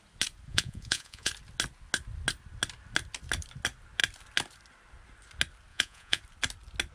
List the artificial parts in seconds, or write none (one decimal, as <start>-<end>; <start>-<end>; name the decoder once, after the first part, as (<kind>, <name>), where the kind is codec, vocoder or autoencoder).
0.5-1.3 (vocoder, Vocos); 5.7-6.2